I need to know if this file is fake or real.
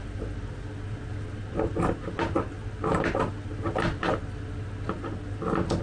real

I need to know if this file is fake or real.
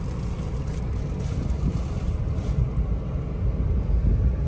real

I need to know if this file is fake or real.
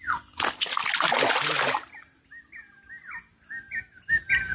real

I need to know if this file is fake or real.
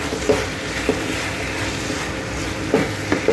real